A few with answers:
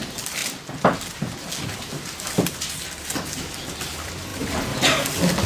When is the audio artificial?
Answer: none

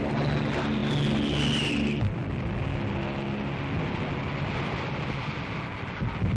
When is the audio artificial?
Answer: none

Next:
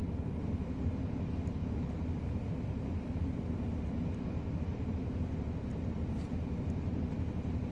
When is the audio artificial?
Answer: 1.6-4.1; 5.7-6.3

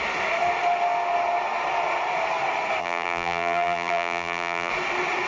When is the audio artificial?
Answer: 2.8-4.7

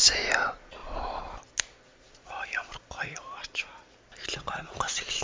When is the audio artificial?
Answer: 0.8-1.5; 1.9-4.5